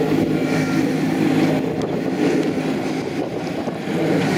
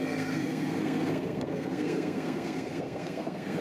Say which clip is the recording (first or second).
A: first